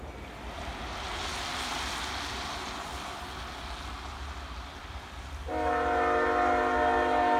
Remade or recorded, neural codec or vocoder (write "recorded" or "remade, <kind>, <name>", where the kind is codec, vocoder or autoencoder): recorded